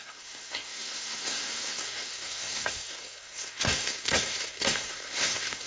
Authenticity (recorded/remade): remade